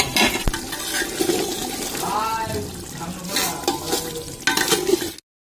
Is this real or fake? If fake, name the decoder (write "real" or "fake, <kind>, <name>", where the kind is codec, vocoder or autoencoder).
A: real